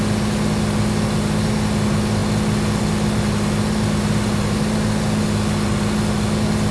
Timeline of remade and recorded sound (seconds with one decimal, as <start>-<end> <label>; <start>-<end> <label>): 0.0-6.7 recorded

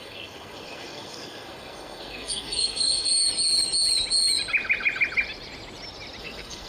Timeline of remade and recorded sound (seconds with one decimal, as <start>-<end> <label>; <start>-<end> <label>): 0.0-3.2 remade; 3.2-6.2 recorded; 6.2-6.7 remade

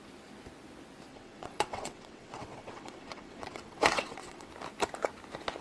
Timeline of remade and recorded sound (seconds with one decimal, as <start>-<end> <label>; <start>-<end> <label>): 0.0-1.1 recorded; 1.1-4.5 remade; 4.5-5.6 recorded